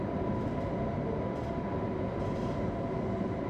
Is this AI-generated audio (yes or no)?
no